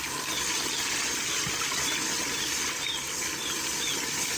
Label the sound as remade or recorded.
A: recorded